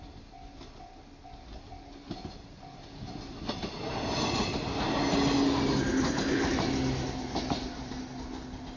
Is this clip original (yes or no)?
yes